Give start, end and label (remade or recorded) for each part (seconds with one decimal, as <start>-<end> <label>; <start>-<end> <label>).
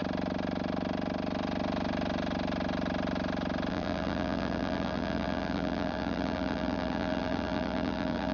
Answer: 0.0-3.7 recorded; 3.7-8.3 remade